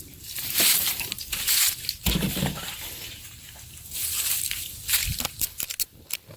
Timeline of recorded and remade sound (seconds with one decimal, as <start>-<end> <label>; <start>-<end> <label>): 0.0-4.0 recorded; 4.0-5.7 remade; 5.7-6.4 recorded